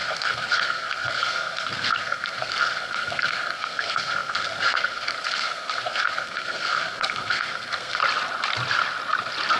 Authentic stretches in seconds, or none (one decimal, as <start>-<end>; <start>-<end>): 8.0-9.6